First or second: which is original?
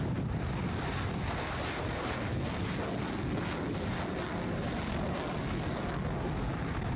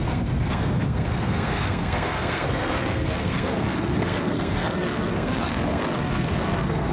first